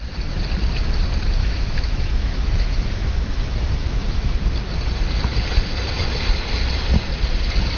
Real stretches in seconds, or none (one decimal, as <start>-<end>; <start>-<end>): 0.0-1.4; 4.4-7.8